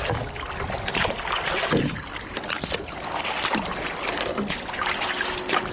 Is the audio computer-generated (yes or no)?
no